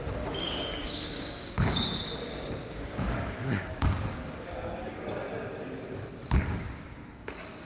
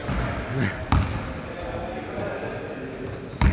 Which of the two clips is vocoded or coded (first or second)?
first